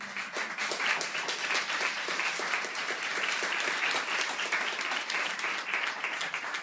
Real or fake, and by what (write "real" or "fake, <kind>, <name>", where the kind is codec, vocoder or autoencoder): real